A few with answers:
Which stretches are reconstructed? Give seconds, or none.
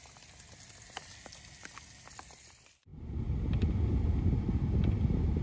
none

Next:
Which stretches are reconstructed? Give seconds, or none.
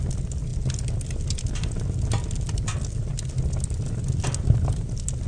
none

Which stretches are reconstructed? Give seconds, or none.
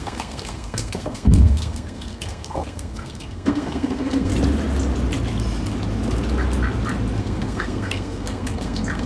0.0-4.3 (codec, SNAC); 7.2-9.1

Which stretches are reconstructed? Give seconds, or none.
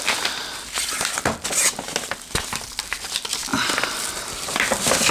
0.0-0.8 (vocoder, BigVGAN v2); 2.9-3.5; 4.1-5.1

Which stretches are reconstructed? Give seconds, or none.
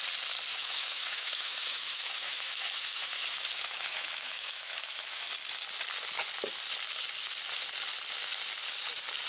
0.5-5.3 (autoencoder, DAC-VAE)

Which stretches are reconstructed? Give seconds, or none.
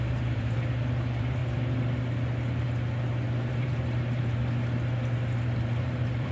0.0-1.4 (vocoder, BigVGAN v2); 3.5-4.4; 5.4-6.3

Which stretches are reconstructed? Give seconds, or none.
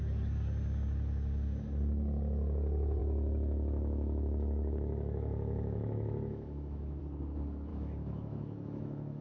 3.0-7.0 (autoencoder, DAC-VAE); 7.7-9.2